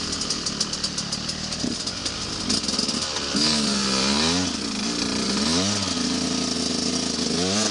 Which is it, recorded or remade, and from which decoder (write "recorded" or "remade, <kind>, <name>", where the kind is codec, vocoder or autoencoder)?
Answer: recorded